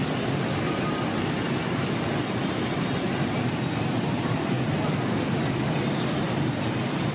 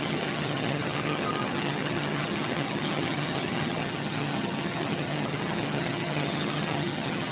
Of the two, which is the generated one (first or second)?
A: second